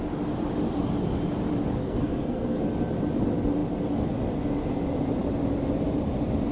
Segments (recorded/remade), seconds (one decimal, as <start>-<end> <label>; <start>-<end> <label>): 0.0-1.8 recorded; 1.8-2.6 remade; 2.6-6.5 recorded